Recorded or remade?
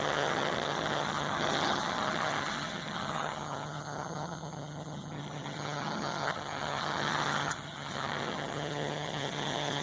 remade